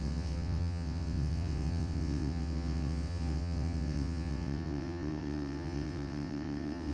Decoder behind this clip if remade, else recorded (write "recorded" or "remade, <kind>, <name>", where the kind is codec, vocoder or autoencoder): remade, vocoder, WaveNeXt